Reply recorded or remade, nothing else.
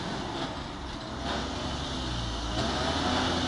recorded